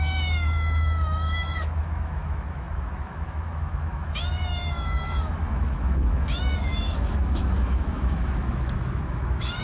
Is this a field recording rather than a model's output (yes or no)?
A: no